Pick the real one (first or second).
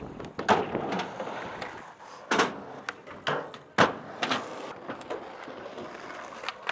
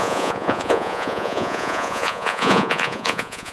first